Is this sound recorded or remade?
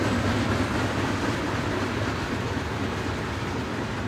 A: recorded